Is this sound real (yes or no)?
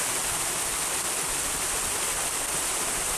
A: no